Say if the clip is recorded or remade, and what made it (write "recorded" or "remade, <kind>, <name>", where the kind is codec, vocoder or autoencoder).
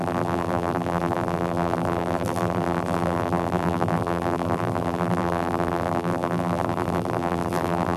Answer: remade, vocoder, BigVGAN v2